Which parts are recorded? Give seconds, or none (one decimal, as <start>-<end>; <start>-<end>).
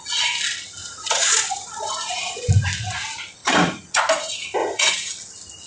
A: 0.0-0.8; 2.5-3.4; 4.0-4.6; 5.1-5.7